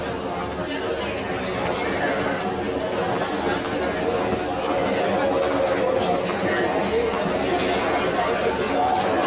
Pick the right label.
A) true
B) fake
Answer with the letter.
A